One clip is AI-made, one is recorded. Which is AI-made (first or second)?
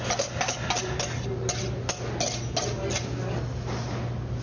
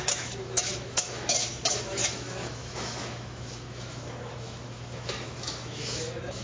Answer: second